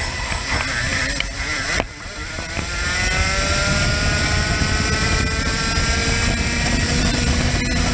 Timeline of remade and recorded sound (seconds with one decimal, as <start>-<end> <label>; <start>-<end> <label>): 0.0-0.9 recorded; 0.9-2.1 remade; 2.1-6.0 recorded; 6.0-7.4 remade; 7.4-7.9 recorded